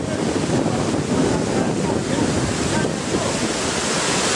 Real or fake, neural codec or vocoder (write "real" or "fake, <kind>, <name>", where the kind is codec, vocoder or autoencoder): real